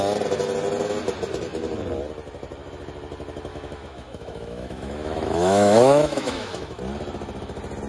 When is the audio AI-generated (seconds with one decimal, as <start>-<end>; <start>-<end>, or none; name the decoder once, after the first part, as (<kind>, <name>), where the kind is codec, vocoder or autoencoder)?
3.5-6.8 (autoencoder, DAC-VAE)